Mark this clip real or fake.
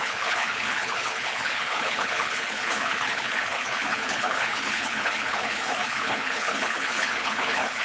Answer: fake